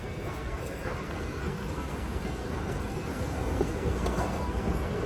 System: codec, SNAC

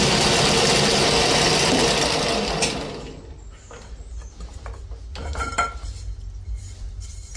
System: none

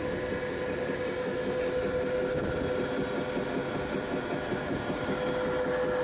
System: none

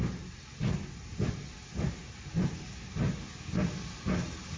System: none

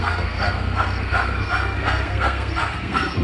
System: codec, SNAC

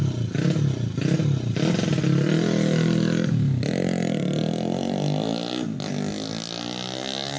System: none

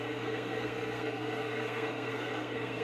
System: codec, SNAC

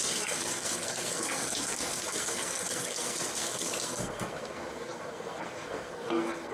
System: codec, SNAC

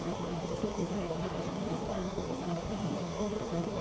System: codec, SNAC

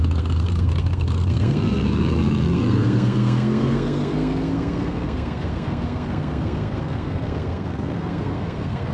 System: codec, SNAC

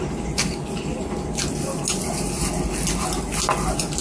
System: none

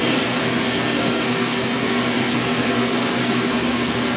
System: codec, SNAC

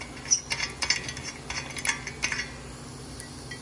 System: none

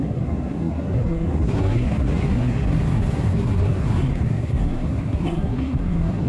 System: codec, SNAC